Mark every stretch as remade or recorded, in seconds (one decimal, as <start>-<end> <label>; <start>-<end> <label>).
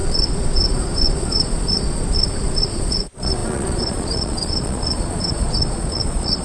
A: 0.0-6.4 remade